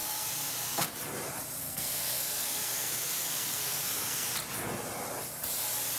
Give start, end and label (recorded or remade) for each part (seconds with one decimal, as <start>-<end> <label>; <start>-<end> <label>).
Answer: 0.0-0.9 remade; 0.9-1.6 recorded; 1.6-4.3 remade; 4.3-6.0 recorded